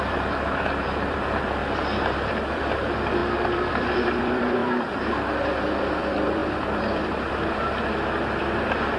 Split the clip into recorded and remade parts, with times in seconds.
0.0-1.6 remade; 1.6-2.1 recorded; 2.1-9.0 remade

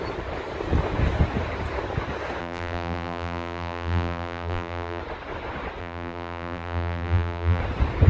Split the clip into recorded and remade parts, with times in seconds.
0.0-2.4 recorded; 2.4-5.0 remade; 5.0-5.8 recorded; 5.8-7.6 remade; 7.6-8.1 recorded

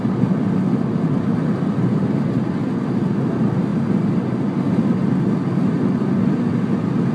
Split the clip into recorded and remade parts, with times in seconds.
0.0-3.7 recorded; 3.7-4.6 remade; 4.6-5.0 recorded; 5.0-6.5 remade; 6.5-7.1 recorded